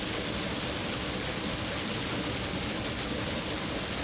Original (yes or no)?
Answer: yes